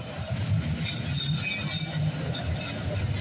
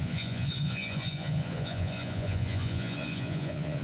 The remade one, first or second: second